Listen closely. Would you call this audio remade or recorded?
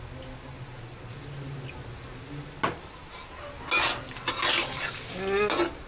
recorded